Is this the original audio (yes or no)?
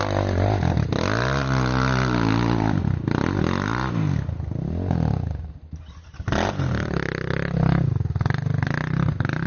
yes